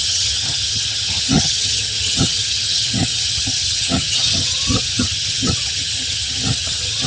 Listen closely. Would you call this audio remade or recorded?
remade